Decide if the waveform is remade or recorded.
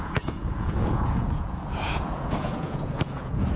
remade